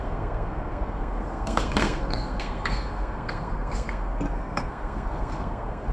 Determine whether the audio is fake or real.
fake